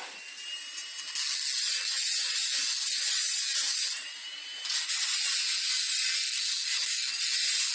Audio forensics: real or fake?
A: real